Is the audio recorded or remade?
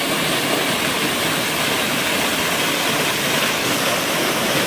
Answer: recorded